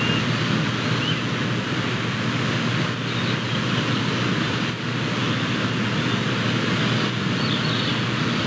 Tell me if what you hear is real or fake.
real